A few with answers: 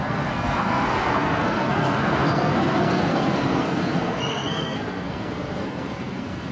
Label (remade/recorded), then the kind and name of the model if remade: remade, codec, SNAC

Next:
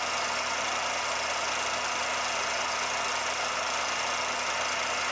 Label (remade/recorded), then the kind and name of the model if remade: recorded